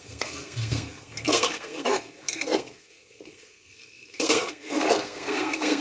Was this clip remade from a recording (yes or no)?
yes